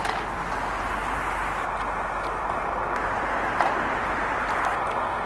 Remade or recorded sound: recorded